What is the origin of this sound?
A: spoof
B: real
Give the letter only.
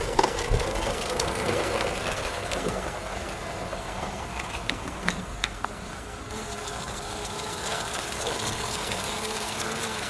A